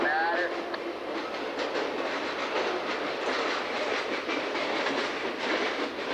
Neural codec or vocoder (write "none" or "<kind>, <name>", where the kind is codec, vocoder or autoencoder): none